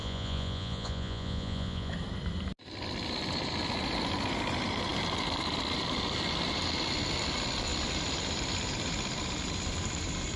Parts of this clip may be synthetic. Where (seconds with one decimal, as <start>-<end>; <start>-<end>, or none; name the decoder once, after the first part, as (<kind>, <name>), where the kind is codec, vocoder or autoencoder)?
0.0-1.9 (vocoder, Vocos)

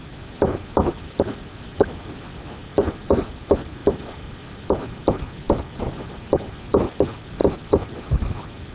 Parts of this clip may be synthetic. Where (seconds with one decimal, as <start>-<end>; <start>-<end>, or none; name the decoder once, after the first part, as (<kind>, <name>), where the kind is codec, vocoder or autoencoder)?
none